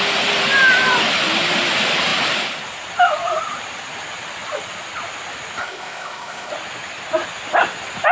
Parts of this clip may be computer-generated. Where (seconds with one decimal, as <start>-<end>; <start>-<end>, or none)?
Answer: 5.6-6.5